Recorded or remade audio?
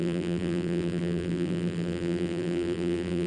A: remade